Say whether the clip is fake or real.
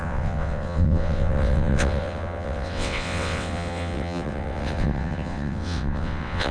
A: fake